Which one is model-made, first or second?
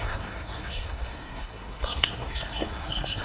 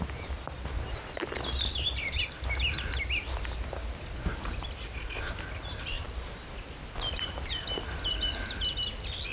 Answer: first